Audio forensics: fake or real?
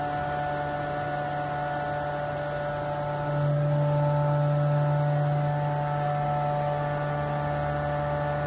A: real